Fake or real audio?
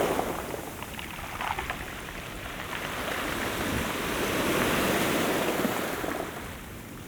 real